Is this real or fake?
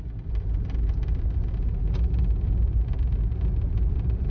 real